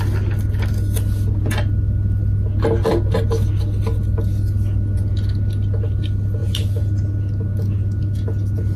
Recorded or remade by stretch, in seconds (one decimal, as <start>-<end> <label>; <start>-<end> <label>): 0.0-8.8 recorded